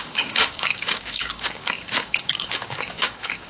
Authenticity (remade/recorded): remade